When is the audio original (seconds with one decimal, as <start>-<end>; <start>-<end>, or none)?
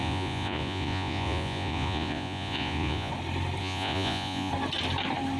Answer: 3.1-3.6; 4.5-5.4